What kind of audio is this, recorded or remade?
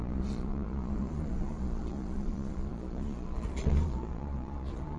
remade